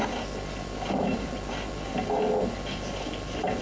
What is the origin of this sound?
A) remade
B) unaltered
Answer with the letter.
B